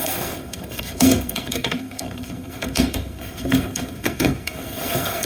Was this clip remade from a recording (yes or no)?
yes